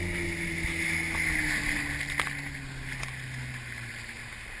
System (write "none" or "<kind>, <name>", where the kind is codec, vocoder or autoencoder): none